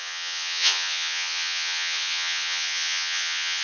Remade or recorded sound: remade